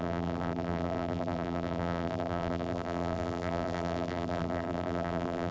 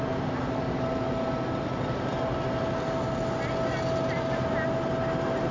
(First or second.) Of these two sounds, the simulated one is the first